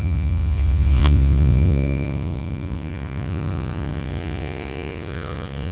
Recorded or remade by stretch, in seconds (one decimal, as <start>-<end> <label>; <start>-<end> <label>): 0.0-5.7 remade